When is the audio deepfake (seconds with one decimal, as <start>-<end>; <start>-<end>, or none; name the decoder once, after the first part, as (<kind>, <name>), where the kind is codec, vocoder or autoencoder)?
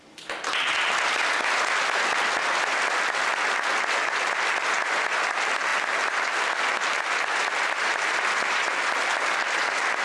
none